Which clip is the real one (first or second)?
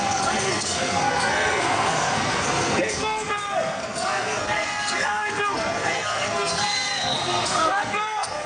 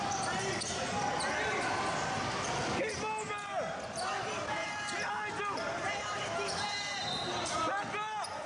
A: second